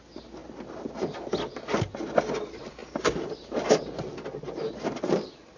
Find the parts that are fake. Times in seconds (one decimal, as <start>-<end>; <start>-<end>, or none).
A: none